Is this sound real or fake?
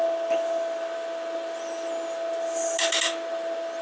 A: real